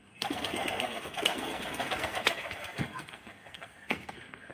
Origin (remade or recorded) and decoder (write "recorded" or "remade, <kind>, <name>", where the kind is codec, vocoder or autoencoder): remade, codec, SNAC